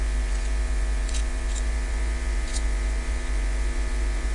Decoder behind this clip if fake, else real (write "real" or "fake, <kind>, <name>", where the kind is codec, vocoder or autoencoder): fake, vocoder, Vocos